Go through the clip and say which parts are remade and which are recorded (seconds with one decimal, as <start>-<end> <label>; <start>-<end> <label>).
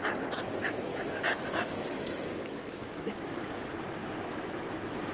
0.0-0.9 recorded; 0.9-3.6 remade; 3.6-5.1 recorded